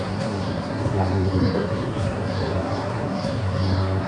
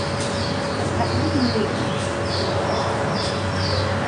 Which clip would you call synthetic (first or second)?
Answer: first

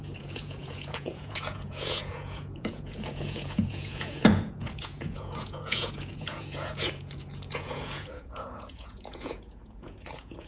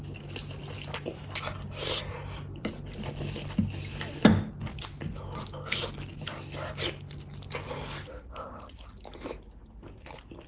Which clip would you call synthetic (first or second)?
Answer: first